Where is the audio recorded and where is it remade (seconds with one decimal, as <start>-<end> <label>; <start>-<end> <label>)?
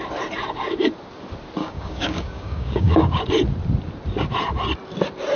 0.0-1.6 recorded; 1.6-3.2 remade; 3.2-5.4 recorded